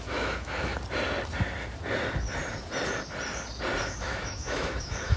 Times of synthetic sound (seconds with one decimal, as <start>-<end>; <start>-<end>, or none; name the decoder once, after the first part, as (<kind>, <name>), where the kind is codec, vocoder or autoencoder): 0.0-0.7 (autoencoder, DAC-VAE); 3.8-5.2